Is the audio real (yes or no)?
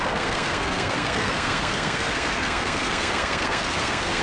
no